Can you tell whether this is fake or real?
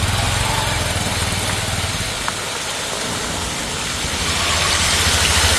real